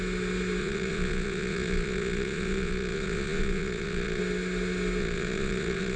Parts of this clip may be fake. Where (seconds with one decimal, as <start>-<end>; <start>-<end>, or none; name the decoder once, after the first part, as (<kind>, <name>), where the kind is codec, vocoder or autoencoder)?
0.6-4.2 (vocoder, Vocos); 5.0-6.0